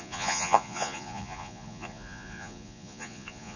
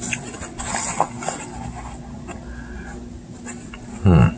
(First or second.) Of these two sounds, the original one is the second